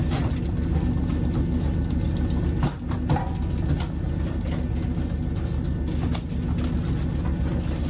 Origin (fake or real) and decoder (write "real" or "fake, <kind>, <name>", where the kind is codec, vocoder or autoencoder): real